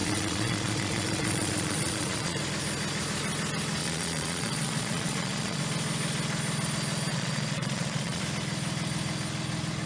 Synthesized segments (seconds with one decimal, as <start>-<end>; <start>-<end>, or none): 0.0-2.4; 3.8-5.6; 7.1-8.2